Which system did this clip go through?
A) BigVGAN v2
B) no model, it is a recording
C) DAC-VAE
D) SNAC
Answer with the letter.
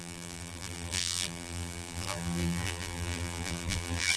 A